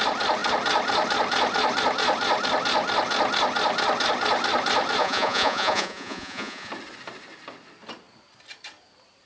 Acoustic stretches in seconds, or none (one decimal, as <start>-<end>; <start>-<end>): 0.0-5.0; 6.7-9.3